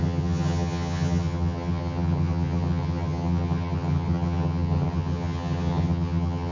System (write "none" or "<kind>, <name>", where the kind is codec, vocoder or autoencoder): vocoder, HiFi-GAN